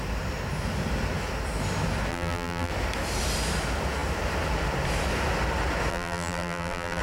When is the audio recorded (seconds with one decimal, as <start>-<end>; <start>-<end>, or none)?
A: 0.0-2.1; 2.7-5.9